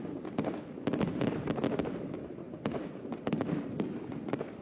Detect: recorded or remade recorded